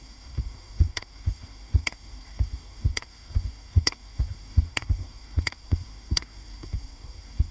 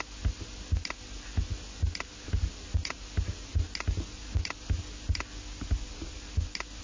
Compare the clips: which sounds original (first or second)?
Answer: second